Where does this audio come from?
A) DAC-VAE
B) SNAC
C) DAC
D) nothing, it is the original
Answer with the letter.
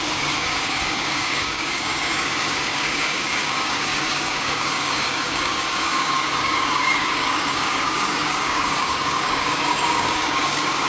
C